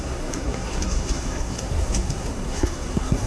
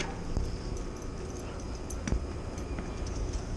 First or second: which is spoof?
first